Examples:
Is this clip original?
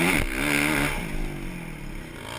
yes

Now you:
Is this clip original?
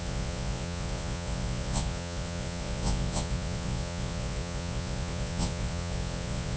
no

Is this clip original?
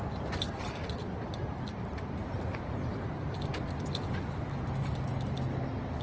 yes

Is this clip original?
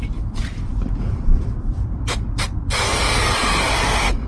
yes